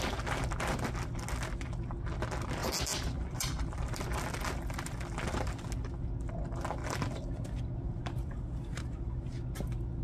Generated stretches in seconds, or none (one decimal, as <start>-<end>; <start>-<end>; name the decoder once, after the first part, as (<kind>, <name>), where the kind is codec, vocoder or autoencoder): 2.6-4.4 (vocoder, BigVGAN v2); 6.8-7.5